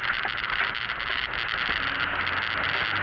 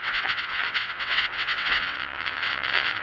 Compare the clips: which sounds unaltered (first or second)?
first